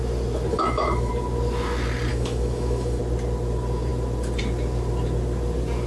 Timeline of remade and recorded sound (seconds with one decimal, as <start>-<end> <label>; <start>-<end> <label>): 0.0-0.5 recorded; 0.5-1.1 remade; 1.1-2.1 recorded; 2.1-3.0 remade; 3.0-5.9 recorded